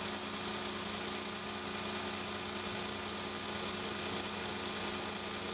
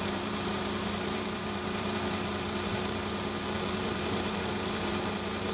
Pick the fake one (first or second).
second